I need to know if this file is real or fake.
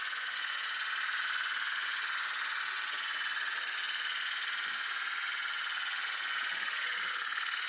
fake